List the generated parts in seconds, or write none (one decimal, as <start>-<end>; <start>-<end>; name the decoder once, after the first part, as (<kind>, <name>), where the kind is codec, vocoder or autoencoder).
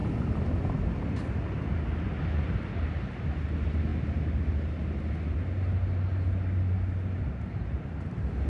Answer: none